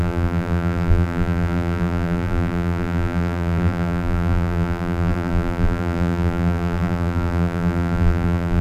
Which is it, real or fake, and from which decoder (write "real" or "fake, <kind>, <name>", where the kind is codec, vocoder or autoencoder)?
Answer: fake, vocoder, BigVGAN v2